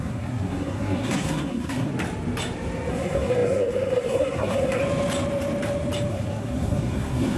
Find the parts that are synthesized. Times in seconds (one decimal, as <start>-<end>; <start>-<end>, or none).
0.0-1.9; 2.9-4.8; 6.1-7.4